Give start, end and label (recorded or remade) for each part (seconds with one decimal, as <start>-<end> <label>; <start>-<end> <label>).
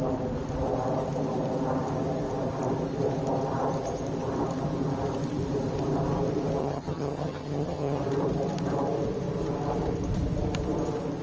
0.0-6.6 recorded; 6.6-8.0 remade; 8.0-11.2 recorded